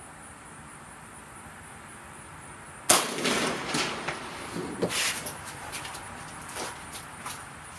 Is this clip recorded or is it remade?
recorded